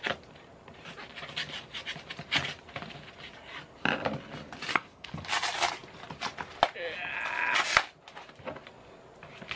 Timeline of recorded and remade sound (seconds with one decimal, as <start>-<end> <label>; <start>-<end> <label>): 0.0-4.7 recorded; 4.7-5.2 remade; 5.2-9.6 recorded